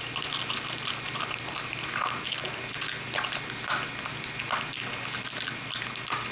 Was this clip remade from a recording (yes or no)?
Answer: no